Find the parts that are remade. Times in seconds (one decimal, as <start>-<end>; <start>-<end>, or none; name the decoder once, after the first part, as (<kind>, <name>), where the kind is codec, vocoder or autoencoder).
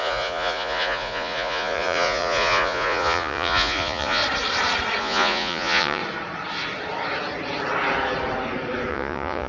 0.0-4.2 (vocoder, Vocos); 5.0-6.0; 8.9-9.5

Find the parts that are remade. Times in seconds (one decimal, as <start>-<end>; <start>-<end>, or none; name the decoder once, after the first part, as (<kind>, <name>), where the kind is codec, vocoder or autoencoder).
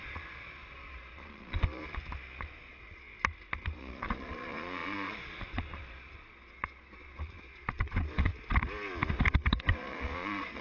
0.0-1.8 (vocoder, Vocos); 2.4-3.1; 3.8-8.3; 9.5-10.6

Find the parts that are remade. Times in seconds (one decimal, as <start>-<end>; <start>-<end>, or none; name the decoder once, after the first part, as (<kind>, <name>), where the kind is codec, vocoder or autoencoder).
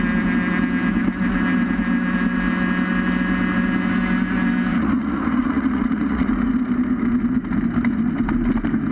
4.7-6.3 (vocoder, Vocos)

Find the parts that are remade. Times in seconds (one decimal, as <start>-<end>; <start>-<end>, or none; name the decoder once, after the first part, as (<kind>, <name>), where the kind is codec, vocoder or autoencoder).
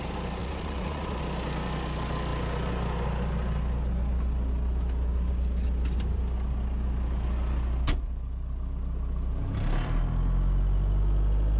0.4-1.2 (vocoder, Vocos)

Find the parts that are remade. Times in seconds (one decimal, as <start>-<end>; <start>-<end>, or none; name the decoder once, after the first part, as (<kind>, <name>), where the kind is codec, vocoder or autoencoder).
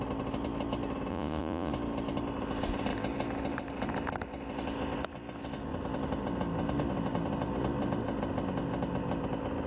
1.1-1.7 (vocoder, Vocos)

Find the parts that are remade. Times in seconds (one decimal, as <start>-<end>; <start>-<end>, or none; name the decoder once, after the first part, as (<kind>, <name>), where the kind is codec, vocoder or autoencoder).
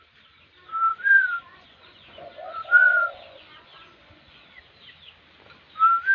0.9-4.6 (vocoder, Vocos)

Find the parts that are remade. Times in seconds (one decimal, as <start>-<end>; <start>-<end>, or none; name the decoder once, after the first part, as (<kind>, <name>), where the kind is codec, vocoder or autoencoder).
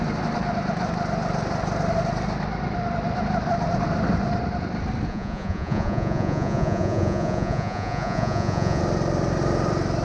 5.1-8.8 (vocoder, Vocos)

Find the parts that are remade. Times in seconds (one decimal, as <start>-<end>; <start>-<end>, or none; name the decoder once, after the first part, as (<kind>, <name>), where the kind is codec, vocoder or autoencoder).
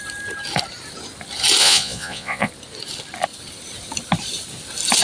1.6-2.5 (vocoder, Vocos)